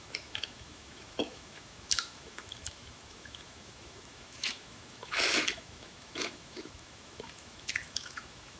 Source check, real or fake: fake